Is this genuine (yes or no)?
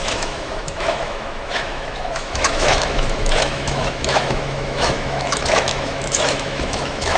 no